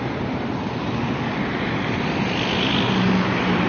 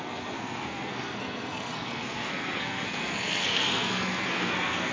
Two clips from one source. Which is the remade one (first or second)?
second